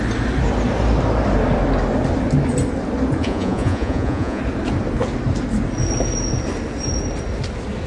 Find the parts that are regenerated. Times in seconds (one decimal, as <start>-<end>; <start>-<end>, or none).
3.2-4.4